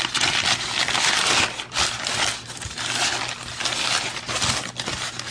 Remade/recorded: recorded